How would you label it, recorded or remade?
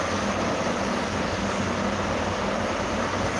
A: recorded